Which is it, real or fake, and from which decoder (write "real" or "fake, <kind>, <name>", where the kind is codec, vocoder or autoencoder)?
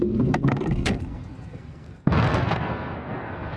fake, codec, SNAC